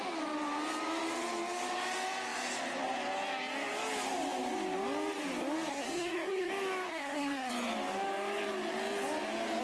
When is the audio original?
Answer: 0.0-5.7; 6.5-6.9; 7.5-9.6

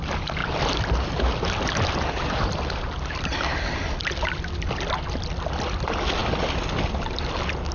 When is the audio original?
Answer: 0.0-7.7

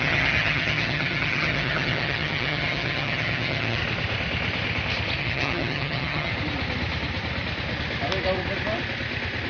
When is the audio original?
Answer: 3.8-5.2; 6.3-9.5

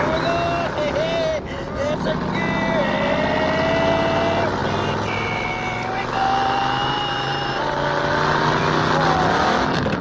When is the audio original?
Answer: 0.0-6.8; 7.6-10.0

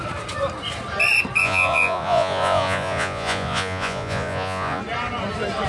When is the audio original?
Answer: 0.0-1.4; 4.8-5.7